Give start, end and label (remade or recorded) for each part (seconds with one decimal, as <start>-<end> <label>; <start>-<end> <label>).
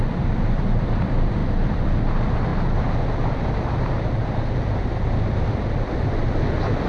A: 0.0-2.5 remade; 2.5-3.2 recorded; 3.2-6.9 remade